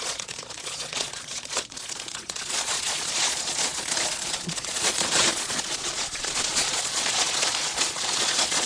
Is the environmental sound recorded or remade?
remade